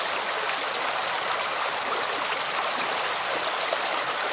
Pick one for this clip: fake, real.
real